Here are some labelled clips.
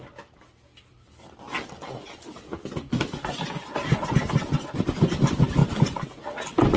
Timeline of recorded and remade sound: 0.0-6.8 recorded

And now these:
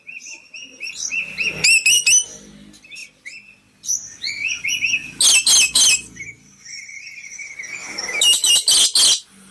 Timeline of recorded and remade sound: 0.0-7.8 recorded; 7.8-8.5 remade; 8.5-9.5 recorded

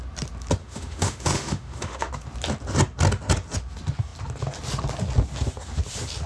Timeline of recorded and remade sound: 0.0-0.6 recorded; 0.6-2.1 remade; 2.1-6.3 recorded

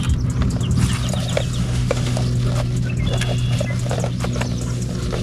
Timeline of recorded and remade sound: 0.0-1.6 recorded; 1.6-2.2 remade; 2.2-5.2 recorded

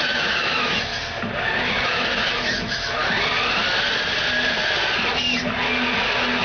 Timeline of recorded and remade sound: 0.0-0.9 remade; 0.9-1.7 recorded; 1.7-3.0 remade; 3.0-6.4 recorded

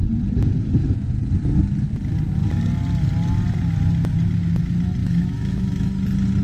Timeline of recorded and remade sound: 0.0-5.0 recorded; 5.0-5.9 remade; 5.9-6.4 recorded

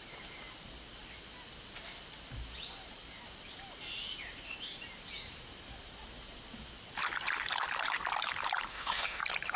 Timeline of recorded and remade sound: 0.0-8.7 recorded; 8.7-9.2 remade; 9.2-9.6 recorded